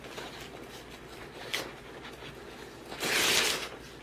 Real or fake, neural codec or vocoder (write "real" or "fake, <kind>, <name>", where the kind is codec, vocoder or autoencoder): real